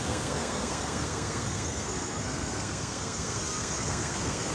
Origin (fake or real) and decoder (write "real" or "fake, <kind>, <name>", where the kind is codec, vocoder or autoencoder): fake, codec, SNAC